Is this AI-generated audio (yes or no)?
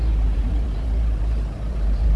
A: yes